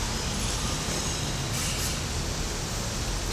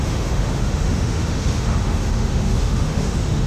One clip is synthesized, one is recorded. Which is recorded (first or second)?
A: first